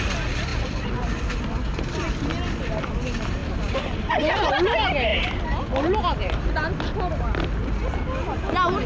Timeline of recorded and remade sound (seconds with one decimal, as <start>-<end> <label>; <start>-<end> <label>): 0.0-3.4 recorded; 3.4-4.5 remade; 4.5-5.1 recorded; 5.1-6.7 remade; 6.7-8.9 recorded